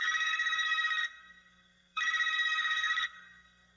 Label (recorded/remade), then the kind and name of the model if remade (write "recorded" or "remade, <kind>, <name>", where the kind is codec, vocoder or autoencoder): remade, codec, SNAC